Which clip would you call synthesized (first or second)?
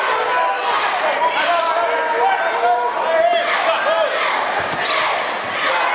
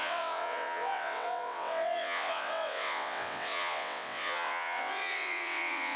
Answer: second